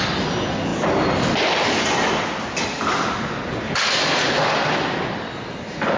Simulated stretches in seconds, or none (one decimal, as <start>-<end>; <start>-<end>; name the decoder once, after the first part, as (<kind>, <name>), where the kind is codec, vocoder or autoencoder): none